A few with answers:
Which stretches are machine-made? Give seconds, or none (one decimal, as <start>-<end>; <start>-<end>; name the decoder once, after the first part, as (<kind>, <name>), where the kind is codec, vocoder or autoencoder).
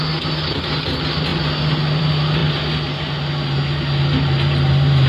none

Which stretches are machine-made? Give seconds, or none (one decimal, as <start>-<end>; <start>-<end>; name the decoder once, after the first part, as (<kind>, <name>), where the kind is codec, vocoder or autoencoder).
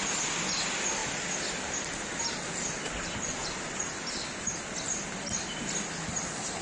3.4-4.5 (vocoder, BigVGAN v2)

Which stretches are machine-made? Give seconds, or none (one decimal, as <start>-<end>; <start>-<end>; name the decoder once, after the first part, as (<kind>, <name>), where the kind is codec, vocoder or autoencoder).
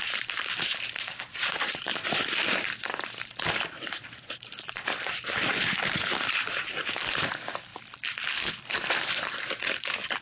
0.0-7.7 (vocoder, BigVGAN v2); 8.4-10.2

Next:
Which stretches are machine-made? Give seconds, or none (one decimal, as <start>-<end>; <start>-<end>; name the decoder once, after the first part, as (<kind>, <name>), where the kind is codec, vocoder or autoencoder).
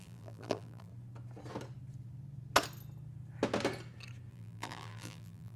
0.0-0.9 (vocoder, BigVGAN v2); 4.3-5.6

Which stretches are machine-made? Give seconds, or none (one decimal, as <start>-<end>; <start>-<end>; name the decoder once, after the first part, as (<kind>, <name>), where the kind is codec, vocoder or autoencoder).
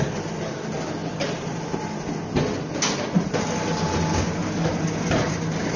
1.0-2.1 (vocoder, BigVGAN v2); 4.4-5.8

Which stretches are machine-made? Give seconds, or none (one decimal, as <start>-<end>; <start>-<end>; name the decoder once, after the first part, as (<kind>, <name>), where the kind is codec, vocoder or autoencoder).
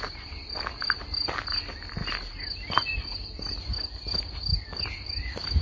none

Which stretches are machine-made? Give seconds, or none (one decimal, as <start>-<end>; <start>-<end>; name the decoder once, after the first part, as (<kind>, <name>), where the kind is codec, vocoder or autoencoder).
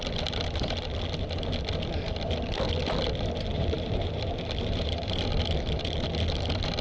3.5-5.3 (vocoder, BigVGAN v2)